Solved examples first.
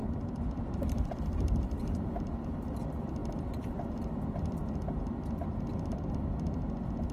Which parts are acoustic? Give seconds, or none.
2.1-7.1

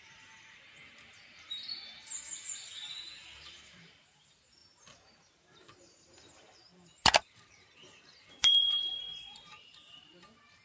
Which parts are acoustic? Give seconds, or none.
none

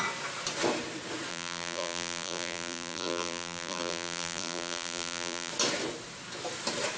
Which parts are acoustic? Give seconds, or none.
0.0-1.3; 5.5-7.0

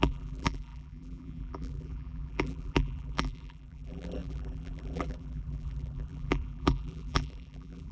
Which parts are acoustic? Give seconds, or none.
none

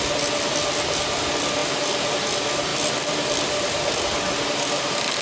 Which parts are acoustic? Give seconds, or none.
0.0-2.7; 4.0-5.2

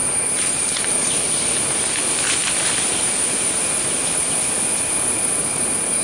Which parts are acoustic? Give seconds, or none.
0.0-6.0

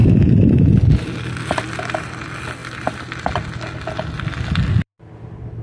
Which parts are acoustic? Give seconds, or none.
0.0-5.6